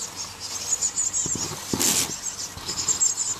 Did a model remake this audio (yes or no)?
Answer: no